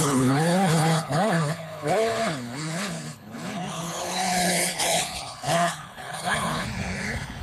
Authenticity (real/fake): fake